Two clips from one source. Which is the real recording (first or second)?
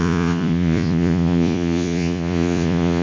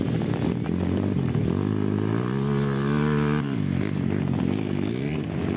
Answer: second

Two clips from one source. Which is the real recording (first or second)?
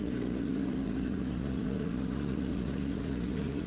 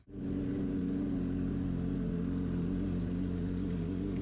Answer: second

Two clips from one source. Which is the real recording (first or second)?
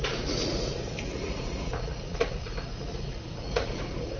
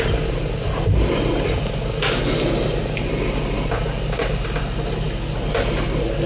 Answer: second